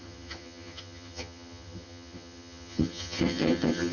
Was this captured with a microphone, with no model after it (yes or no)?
no